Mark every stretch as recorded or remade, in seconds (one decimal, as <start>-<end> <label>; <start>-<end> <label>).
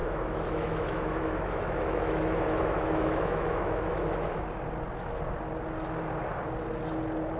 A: 0.0-4.4 remade; 4.4-7.4 recorded